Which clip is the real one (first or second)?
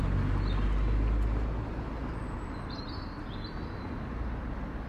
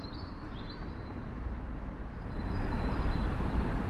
first